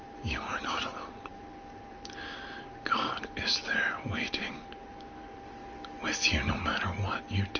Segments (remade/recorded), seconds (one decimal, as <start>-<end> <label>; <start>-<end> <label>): 0.0-5.6 remade; 5.6-6.5 recorded; 6.5-7.6 remade